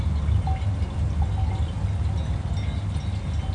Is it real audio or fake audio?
real